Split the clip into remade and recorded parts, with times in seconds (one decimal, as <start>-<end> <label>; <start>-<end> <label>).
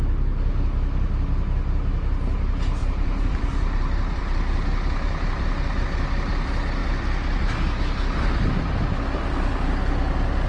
0.0-2.8 recorded; 2.8-5.8 remade; 5.8-10.5 recorded